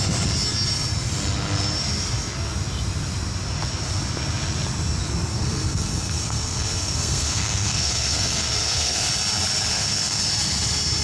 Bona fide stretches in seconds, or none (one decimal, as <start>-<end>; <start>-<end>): 0.0-5.3; 9.1-9.7; 10.2-11.0